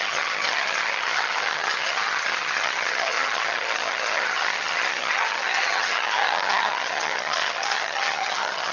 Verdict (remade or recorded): remade